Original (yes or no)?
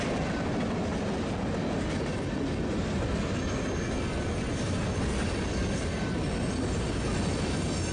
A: yes